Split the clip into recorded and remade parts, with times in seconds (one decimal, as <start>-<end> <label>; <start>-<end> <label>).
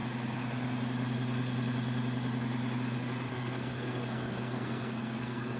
0.0-3.3 recorded; 3.3-5.6 remade